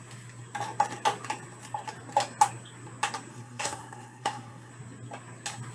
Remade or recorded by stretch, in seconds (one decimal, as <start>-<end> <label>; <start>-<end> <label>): 0.0-3.3 recorded; 3.3-4.7 remade; 4.7-5.7 recorded

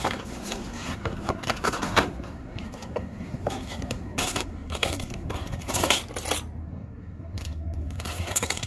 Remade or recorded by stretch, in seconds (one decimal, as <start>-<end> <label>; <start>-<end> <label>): 0.0-6.0 remade; 6.0-6.6 recorded; 6.6-8.7 remade

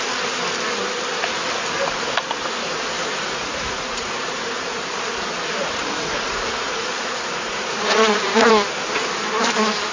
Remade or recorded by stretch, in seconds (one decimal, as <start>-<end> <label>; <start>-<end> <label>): 0.0-3.0 recorded; 3.0-5.0 remade; 5.0-5.6 recorded; 5.6-8.5 remade; 8.5-9.9 recorded

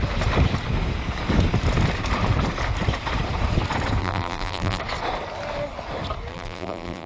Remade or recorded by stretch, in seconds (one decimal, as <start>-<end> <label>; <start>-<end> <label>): 0.0-4.0 recorded; 4.0-4.8 remade; 4.8-6.3 recorded; 6.3-7.1 remade

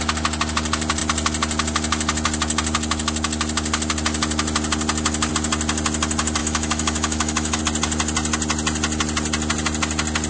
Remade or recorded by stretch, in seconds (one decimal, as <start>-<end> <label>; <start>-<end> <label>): 0.0-6.4 recorded; 6.4-7.6 remade; 7.6-10.3 recorded

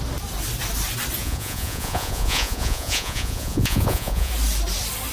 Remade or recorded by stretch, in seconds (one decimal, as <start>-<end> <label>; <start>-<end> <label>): 0.0-1.2 recorded; 1.2-4.3 remade; 4.3-5.1 recorded

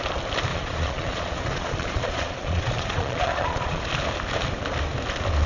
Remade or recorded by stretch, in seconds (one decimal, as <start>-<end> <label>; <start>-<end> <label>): 0.0-0.5 recorded; 0.5-3.8 remade; 3.8-5.5 recorded

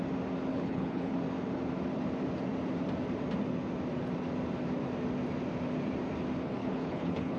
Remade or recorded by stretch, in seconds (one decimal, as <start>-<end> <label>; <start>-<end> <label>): 0.0-0.5 recorded; 0.5-1.2 remade; 1.2-6.6 recorded; 6.6-7.4 remade